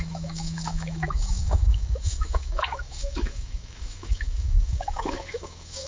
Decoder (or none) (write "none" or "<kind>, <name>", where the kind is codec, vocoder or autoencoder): autoencoder, DAC-VAE